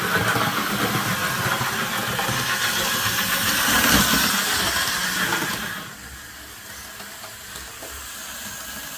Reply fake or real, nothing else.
real